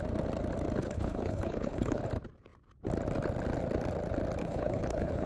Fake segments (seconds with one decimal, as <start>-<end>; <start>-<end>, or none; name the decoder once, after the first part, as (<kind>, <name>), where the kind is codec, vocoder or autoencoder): 0.8-2.0 (codec, HILCodec); 4.4-5.3